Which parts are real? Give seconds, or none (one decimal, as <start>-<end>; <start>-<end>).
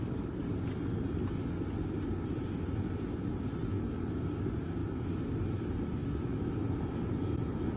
0.0-6.0; 6.5-7.8